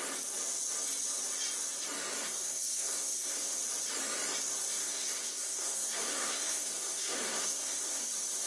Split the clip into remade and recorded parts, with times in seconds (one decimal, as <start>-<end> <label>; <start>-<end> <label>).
0.0-2.2 recorded; 2.2-3.6 remade; 3.6-4.8 recorded; 4.8-8.1 remade; 8.1-8.5 recorded